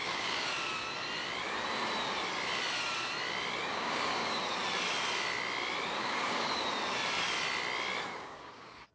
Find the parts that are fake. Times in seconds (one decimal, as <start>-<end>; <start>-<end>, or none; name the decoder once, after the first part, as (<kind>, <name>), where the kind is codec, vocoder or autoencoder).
0.0-0.5 (codec, DAC); 3.6-4.4; 6.0-6.6; 8.1-8.9